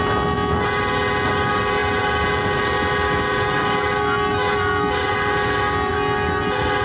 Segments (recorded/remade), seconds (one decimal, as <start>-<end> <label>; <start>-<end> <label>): 0.0-6.8 recorded